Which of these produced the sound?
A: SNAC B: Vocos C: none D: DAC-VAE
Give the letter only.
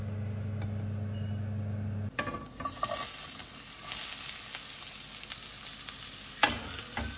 C